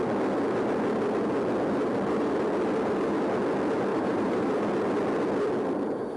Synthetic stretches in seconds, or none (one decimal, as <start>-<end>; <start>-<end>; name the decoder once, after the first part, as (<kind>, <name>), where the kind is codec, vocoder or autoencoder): 3.9-4.5 (vocoder, BigVGAN v2)